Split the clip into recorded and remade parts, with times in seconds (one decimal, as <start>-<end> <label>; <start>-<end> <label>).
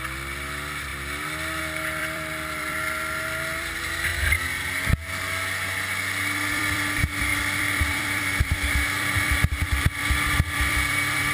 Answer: 0.0-0.9 remade; 0.9-1.6 recorded; 1.6-4.1 remade; 4.1-6.5 recorded; 6.5-11.3 remade